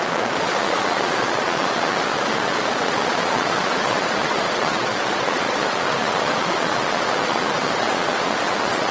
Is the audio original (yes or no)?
no